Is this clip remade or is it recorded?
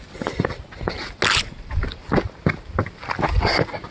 recorded